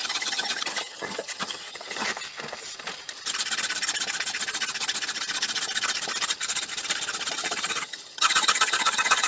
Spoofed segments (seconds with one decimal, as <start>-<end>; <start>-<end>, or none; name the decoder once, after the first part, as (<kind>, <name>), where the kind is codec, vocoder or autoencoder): 0.0-2.1 (vocoder, HiFi-GAN); 7.3-9.3